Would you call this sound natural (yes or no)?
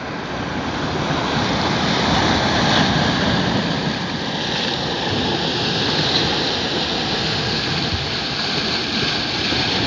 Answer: yes